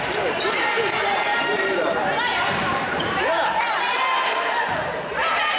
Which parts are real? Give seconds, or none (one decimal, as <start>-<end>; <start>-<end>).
0.0-1.3; 3.8-5.6